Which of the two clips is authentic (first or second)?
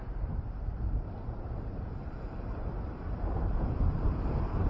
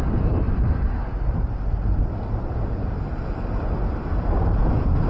second